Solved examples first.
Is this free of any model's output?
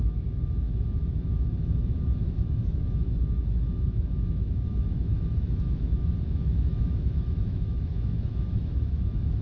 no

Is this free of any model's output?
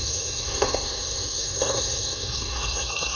no